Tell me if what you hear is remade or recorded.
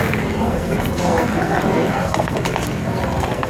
remade